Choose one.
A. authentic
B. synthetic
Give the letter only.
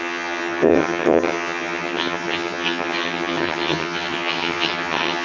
B